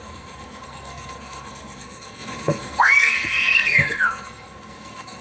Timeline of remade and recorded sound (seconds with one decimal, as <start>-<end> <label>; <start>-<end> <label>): 0.0-5.2 remade